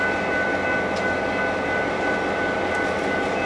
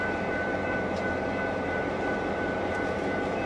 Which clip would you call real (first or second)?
first